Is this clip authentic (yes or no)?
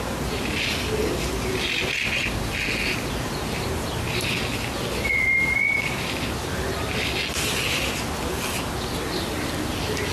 yes